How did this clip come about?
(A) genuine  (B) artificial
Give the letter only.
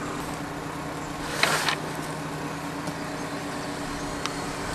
A